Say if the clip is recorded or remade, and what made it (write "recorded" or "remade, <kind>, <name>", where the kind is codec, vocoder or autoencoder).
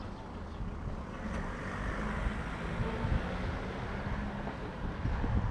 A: recorded